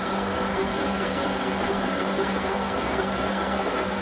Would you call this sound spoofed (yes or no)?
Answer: yes